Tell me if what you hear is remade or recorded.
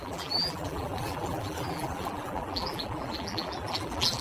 remade